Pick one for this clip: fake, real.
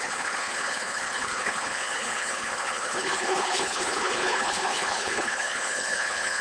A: fake